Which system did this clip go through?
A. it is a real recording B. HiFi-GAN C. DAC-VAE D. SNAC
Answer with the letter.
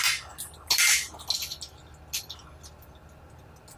A